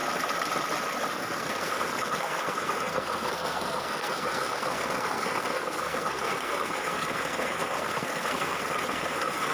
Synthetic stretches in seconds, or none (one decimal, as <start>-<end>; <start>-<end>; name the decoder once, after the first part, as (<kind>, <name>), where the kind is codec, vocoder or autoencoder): 1.1-9.5 (codec, SNAC)